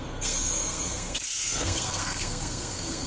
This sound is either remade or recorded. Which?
remade